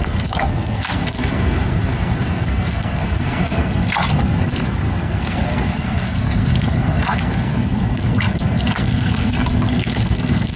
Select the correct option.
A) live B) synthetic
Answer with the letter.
B